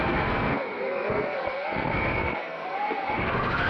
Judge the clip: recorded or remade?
remade